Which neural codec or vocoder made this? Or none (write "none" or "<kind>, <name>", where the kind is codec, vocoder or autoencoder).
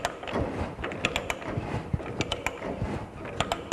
none